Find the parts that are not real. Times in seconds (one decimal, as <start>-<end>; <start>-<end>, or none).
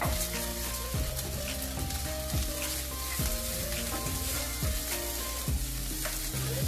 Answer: 0.5-1.4